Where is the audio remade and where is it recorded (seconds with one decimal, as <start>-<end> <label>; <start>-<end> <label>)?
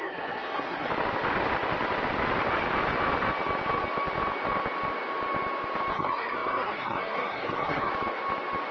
0.0-0.9 remade; 0.9-5.9 recorded; 5.9-7.9 remade; 7.9-8.7 recorded